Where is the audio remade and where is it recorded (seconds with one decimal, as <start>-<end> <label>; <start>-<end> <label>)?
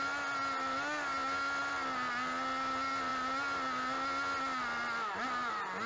0.0-5.9 recorded